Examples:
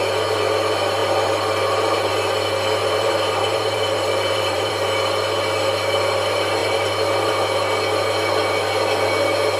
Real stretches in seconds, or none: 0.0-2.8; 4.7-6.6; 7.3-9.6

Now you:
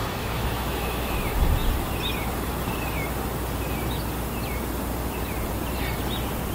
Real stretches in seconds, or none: 1.2-6.5

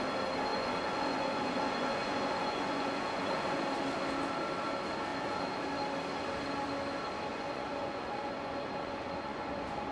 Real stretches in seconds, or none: 0.0-0.5; 3.6-5.1; 5.6-7.3

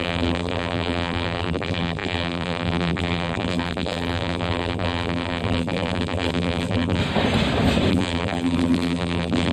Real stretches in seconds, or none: 7.0-7.9

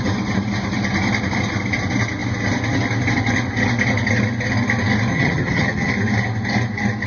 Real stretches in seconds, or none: 0.0-5.1; 5.9-7.1